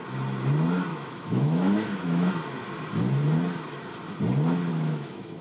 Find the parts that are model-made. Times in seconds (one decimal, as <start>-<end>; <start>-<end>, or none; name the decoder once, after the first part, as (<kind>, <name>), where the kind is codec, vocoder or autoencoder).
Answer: 0.9-2.3 (autoencoder, DAC-VAE); 4.7-5.4